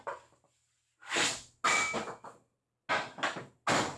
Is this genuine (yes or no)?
yes